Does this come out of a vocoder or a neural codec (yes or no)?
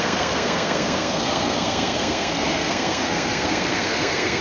yes